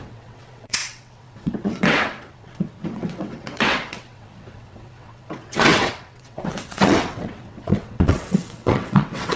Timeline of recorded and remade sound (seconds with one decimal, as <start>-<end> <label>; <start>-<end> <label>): 0.0-9.4 remade